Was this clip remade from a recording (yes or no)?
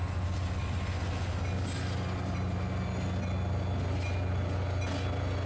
no